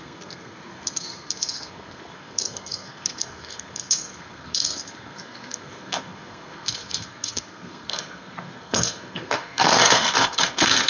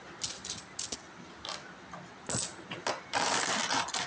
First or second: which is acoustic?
second